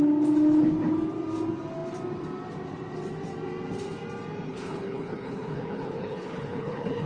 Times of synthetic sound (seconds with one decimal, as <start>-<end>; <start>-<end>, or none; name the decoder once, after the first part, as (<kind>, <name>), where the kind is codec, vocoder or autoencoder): 4.5-7.1 (codec, HILCodec)